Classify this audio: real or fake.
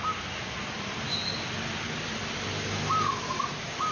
real